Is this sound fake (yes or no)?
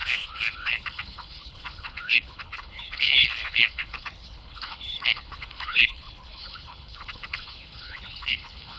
yes